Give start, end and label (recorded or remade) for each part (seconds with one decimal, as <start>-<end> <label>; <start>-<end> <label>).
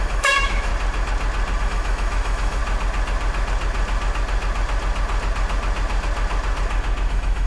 0.0-0.7 remade; 0.7-1.6 recorded; 1.6-2.6 remade; 2.6-7.1 recorded; 7.1-7.5 remade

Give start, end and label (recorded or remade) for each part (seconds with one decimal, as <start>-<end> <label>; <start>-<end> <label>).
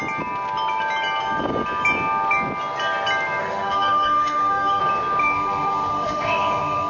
0.0-3.4 recorded; 3.4-4.8 remade; 4.8-5.2 recorded; 5.2-6.9 remade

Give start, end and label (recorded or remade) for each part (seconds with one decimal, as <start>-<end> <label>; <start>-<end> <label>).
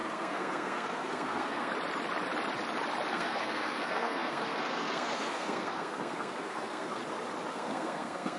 0.0-1.7 remade; 1.7-3.1 recorded; 3.1-7.0 remade; 7.0-7.5 recorded; 7.5-8.4 remade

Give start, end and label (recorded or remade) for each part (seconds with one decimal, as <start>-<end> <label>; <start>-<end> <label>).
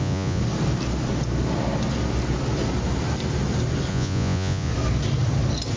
0.0-0.4 remade; 0.4-3.9 recorded; 3.9-4.7 remade; 4.7-5.8 recorded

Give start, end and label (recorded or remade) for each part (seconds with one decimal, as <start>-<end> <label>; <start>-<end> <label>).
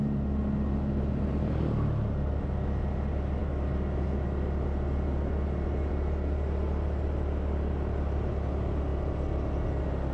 0.0-10.1 recorded